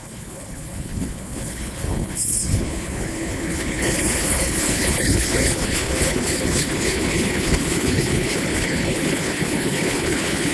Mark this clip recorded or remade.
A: remade